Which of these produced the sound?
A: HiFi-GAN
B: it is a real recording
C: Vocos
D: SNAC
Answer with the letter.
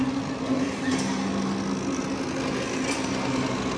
B